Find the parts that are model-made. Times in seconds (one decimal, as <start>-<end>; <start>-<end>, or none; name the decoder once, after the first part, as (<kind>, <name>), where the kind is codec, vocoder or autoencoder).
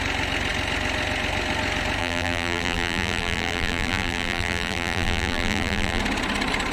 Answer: 2.0-6.0 (vocoder, BigVGAN v2)